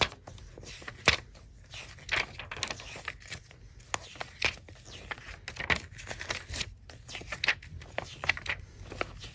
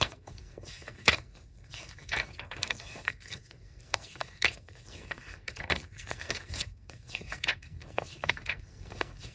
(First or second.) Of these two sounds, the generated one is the second